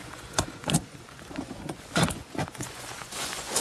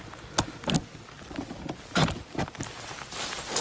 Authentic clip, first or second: second